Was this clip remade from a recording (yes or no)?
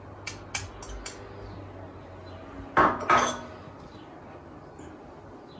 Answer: no